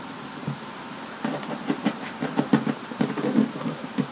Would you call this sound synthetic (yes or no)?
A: no